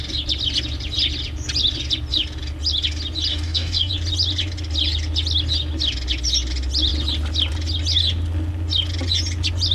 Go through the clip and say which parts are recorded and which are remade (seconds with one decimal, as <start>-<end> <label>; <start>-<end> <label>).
0.0-3.3 recorded; 3.3-3.9 remade; 3.9-9.7 recorded

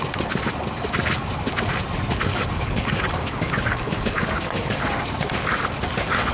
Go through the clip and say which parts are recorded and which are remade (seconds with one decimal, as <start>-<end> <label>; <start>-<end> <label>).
0.0-2.3 recorded; 2.3-4.8 remade; 4.8-6.3 recorded

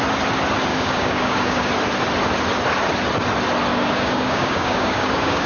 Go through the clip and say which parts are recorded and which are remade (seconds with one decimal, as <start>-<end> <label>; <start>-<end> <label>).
0.0-0.7 recorded; 0.7-1.7 remade; 1.7-3.7 recorded; 3.7-5.5 remade

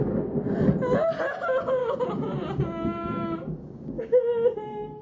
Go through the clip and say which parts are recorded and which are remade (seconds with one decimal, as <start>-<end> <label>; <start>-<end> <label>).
0.0-1.8 recorded; 1.8-5.0 remade